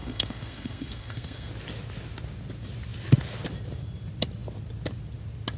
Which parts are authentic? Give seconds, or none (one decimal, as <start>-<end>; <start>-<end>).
1.5-5.6